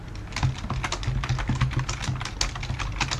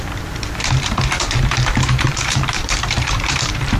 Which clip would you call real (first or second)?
first